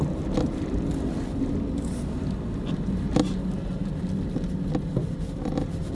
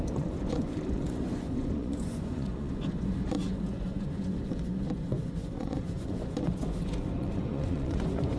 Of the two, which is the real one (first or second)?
first